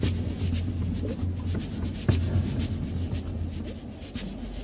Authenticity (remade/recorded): recorded